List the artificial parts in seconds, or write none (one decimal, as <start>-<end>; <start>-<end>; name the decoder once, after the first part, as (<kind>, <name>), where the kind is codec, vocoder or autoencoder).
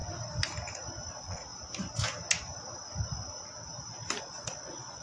1.1-1.5 (vocoder, Vocos); 4.2-5.0